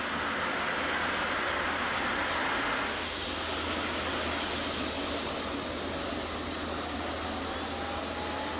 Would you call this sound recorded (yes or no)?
yes